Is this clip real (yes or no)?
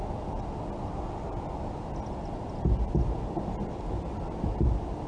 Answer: yes